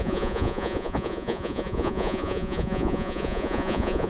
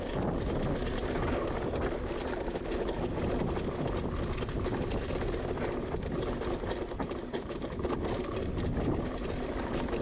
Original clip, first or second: second